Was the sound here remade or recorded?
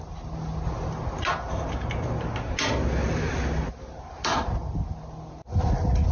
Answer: recorded